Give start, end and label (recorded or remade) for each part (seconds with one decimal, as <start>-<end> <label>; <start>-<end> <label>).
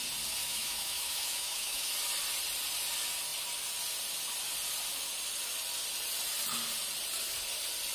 0.0-0.4 recorded; 0.4-1.9 remade; 1.9-7.9 recorded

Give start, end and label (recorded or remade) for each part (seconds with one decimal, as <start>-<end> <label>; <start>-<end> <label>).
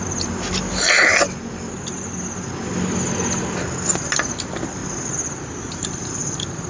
0.0-6.7 recorded